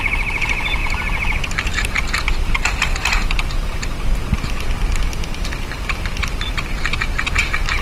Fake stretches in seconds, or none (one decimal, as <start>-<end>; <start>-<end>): none